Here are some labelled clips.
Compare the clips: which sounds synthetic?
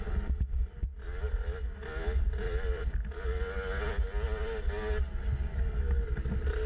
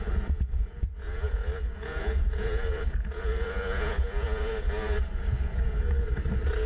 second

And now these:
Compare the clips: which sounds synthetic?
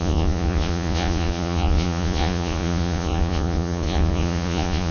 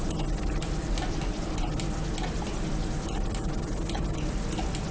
first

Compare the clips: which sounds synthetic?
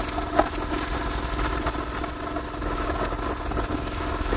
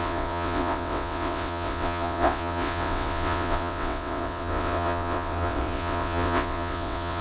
second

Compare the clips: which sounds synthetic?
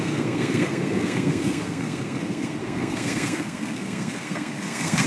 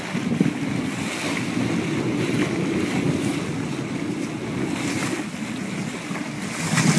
first